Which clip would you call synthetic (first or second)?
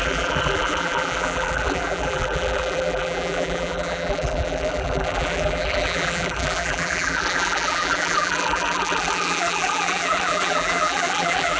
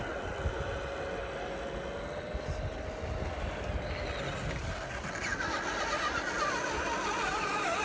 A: first